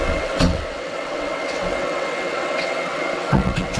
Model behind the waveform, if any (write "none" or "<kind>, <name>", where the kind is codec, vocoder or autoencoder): vocoder, WaveNeXt